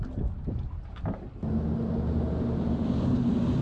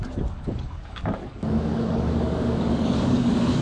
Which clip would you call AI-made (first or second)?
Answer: second